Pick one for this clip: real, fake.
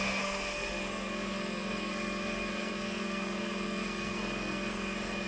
fake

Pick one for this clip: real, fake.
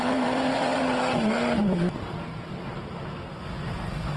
real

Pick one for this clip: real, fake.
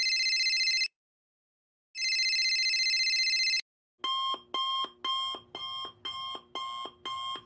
real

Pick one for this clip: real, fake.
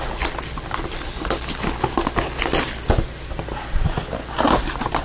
real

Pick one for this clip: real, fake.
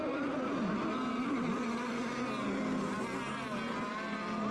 real